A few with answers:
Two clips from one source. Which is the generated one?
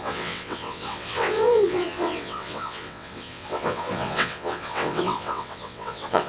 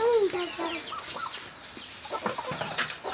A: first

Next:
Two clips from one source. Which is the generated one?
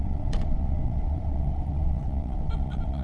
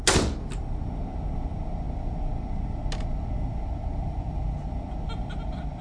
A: first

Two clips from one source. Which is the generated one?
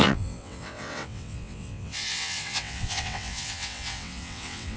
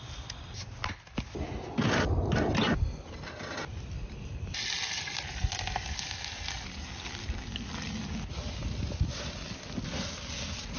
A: first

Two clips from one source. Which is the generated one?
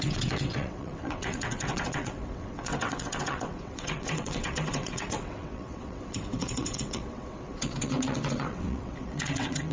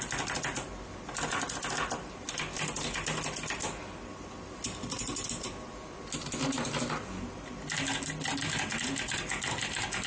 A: first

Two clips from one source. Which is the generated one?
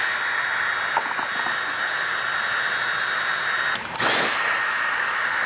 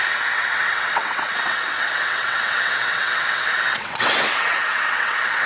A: second